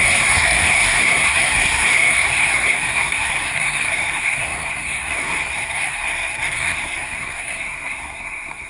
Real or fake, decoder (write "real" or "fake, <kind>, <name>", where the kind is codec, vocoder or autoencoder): fake, codec, SNAC